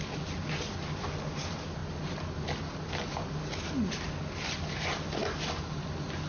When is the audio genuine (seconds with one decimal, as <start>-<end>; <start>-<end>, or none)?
0.0-6.3